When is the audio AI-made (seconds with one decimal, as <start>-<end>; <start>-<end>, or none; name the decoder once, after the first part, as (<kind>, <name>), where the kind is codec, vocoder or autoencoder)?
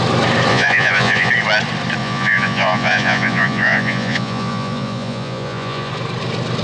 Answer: 0.5-1.3 (vocoder, Vocos); 2.0-5.9